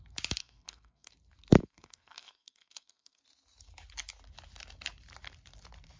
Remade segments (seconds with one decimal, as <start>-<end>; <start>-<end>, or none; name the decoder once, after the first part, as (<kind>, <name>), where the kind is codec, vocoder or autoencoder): 0.4-1.1 (codec, SNAC); 1.6-3.2